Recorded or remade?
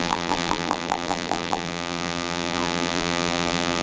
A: remade